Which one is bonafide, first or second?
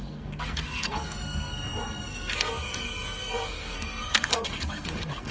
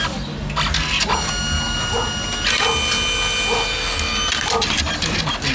second